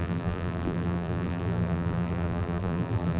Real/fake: fake